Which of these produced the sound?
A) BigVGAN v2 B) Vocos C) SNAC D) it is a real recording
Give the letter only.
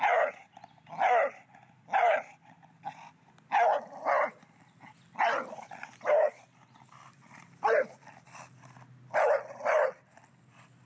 D